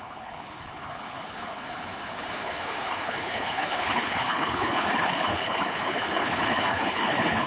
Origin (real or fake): fake